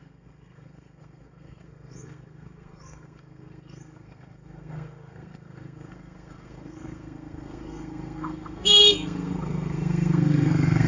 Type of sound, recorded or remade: remade